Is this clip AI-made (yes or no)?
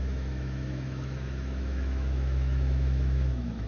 yes